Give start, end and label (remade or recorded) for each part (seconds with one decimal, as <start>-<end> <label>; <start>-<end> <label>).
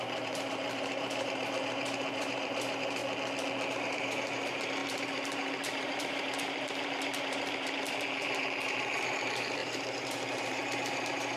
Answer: 0.0-3.0 remade; 3.0-3.7 recorded; 3.7-11.4 remade